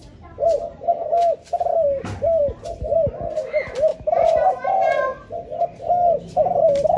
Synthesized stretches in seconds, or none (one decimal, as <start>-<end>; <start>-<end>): 3.9-4.5